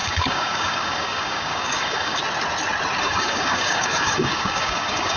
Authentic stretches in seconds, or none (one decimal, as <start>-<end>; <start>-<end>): 2.2-3.0